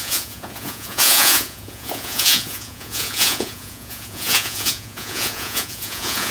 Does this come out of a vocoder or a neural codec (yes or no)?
yes